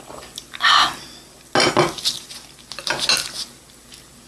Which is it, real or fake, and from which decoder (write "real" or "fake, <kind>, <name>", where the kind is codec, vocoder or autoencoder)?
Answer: real